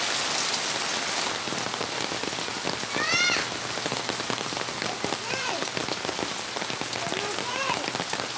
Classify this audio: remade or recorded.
recorded